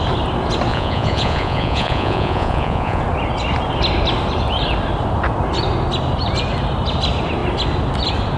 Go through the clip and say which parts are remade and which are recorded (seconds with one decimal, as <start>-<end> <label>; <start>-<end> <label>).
0.0-0.7 recorded; 0.7-3.0 remade; 3.0-8.4 recorded